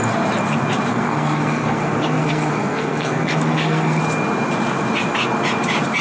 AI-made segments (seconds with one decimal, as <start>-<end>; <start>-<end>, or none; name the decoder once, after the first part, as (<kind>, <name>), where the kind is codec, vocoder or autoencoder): 0.9-4.0 (codec, SNAC)